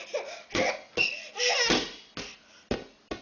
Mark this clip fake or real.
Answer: real